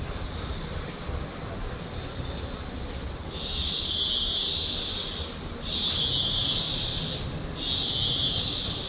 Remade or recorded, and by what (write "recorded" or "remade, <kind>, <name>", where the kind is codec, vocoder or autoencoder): recorded